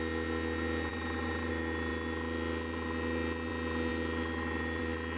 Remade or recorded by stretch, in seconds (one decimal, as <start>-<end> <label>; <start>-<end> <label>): 0.0-0.9 recorded; 0.9-1.5 remade; 1.5-5.2 recorded